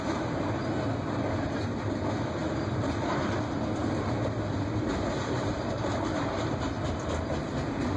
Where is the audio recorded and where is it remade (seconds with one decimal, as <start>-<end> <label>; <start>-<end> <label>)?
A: 0.0-2.4 recorded; 2.4-3.3 remade; 3.3-3.8 recorded; 3.8-6.4 remade; 6.4-8.0 recorded